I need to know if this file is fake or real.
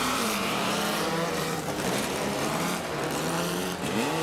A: fake